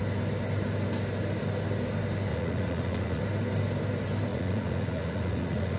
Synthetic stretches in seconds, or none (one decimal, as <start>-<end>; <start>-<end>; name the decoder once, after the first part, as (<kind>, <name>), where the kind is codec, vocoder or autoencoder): 2.3-3.2 (vocoder, Vocos); 4.3-5.8